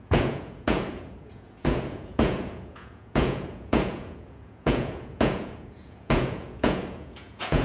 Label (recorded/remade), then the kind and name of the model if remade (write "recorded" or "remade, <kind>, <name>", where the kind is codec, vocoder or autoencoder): remade, vocoder, Vocos